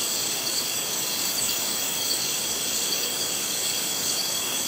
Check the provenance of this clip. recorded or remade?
remade